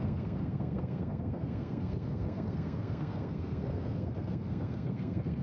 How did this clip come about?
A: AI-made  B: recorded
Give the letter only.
A